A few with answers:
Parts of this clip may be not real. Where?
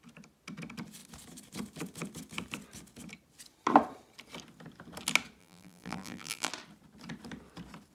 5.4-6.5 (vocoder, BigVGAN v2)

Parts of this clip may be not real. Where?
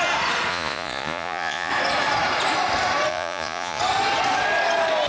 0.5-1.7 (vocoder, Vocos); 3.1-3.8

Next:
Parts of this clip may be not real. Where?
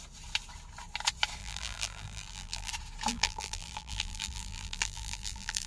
1.4-2.7 (vocoder, BigVGAN v2); 3.1-5.7